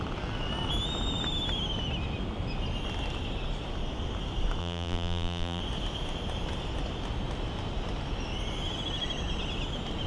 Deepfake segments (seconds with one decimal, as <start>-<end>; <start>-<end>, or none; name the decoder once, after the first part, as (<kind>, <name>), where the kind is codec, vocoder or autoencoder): 4.6-5.6 (vocoder, BigVGAN v2)

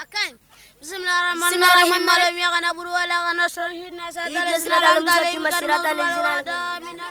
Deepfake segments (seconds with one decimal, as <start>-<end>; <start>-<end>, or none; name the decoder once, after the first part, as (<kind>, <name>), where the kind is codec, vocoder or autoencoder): 3.6-4.8 (vocoder, BigVGAN v2)

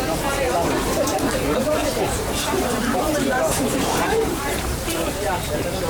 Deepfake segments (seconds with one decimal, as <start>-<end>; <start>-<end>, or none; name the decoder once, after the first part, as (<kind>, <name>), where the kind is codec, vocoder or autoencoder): 1.8-5.3 (vocoder, BigVGAN v2)

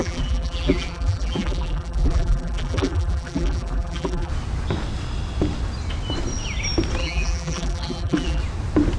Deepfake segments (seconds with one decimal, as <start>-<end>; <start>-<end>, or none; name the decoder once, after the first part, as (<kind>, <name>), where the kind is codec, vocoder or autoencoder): 0.0-4.3 (vocoder, BigVGAN v2); 7.0-8.4

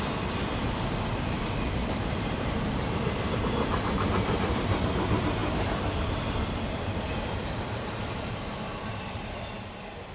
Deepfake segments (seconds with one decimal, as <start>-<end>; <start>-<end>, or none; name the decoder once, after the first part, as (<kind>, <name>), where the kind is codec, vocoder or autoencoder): 1.8-4.8 (vocoder, BigVGAN v2); 5.4-9.7

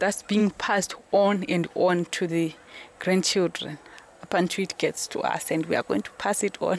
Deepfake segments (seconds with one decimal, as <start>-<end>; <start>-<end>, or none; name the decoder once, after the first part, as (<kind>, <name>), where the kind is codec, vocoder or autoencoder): 5.0-6.2 (vocoder, BigVGAN v2)